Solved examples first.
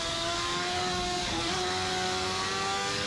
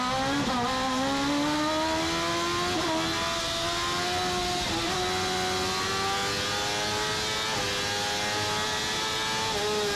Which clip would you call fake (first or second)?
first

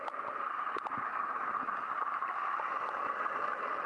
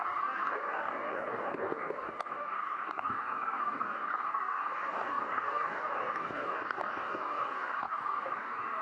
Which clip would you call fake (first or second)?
second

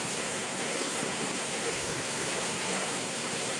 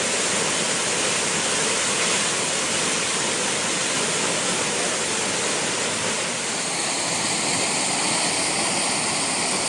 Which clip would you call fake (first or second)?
first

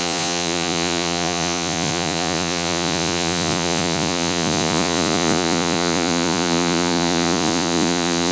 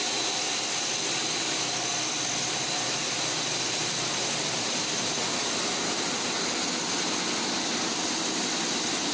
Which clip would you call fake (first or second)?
first